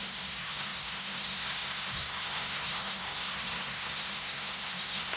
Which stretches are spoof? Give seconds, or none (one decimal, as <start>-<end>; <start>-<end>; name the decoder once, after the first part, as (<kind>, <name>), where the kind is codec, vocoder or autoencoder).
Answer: 0.0-5.2 (codec, SNAC)